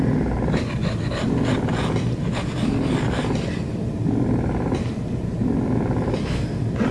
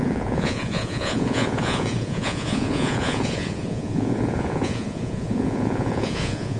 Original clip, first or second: first